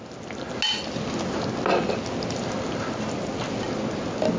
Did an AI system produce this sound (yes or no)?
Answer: no